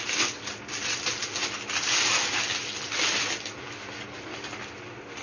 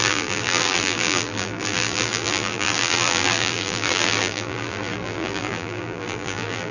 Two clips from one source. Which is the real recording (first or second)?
first